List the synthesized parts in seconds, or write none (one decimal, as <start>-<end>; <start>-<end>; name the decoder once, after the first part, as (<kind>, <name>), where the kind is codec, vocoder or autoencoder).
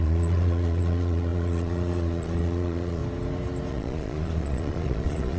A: 0.0-3.0 (vocoder, Vocos); 3.7-5.4